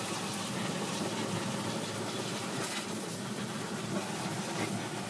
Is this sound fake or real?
real